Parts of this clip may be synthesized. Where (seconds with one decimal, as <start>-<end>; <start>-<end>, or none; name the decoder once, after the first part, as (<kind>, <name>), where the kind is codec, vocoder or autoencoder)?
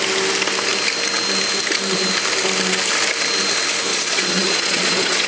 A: 3.9-5.3 (vocoder, Vocos)